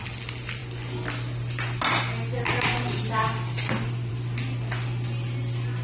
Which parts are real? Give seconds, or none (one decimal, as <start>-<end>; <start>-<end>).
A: 0.0-5.8